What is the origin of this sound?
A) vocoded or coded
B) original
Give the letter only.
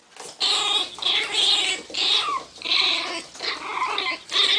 B